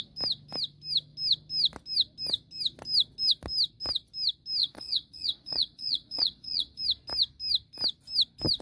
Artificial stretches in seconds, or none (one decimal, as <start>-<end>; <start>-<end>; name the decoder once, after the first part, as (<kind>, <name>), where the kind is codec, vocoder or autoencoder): 4.6-6.8 (vocoder, Vocos)